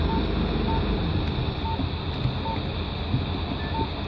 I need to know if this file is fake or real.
real